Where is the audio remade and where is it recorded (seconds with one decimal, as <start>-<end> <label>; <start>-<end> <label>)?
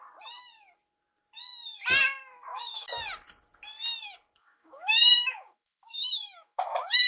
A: 0.0-2.5 recorded; 2.5-3.0 remade; 3.0-4.4 recorded; 4.4-7.1 remade